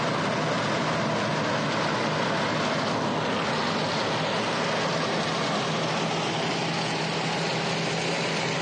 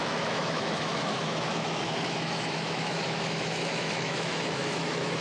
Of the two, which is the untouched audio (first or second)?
first